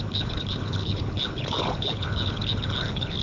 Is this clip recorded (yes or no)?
no